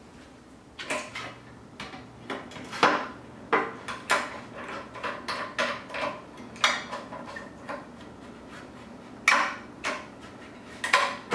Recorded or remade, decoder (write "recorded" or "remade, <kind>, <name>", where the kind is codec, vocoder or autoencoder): recorded